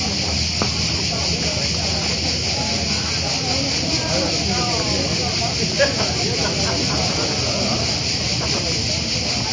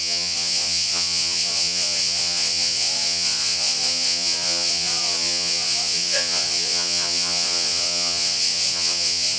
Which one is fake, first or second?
second